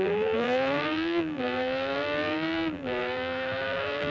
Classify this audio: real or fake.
fake